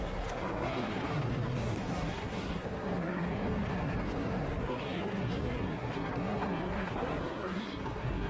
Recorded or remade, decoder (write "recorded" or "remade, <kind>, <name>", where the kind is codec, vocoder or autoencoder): remade, codec, SNAC